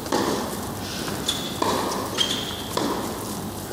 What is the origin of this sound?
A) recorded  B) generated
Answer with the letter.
A